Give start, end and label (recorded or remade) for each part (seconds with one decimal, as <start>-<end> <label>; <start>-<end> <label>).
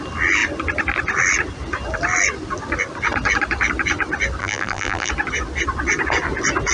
0.0-4.4 recorded; 4.4-5.1 remade; 5.1-6.7 recorded